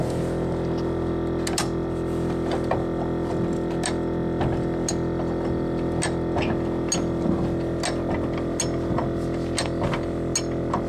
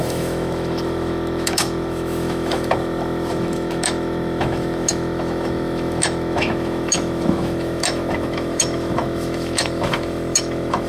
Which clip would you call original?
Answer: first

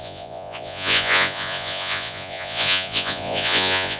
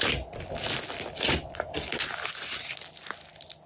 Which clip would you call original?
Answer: second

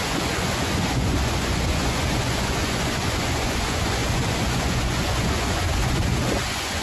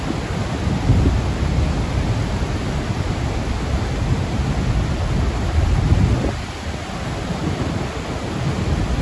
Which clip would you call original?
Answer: second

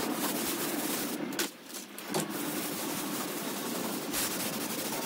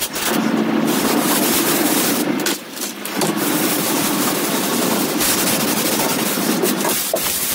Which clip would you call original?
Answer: first